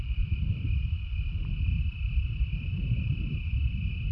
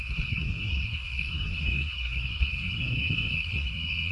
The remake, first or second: second